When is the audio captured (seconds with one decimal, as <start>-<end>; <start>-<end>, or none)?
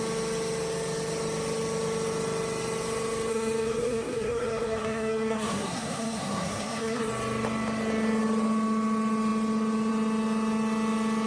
0.0-3.3; 7.1-11.3